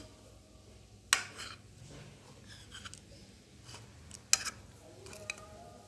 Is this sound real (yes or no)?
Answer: yes